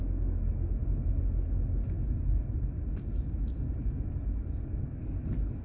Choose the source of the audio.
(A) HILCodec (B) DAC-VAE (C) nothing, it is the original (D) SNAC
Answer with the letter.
C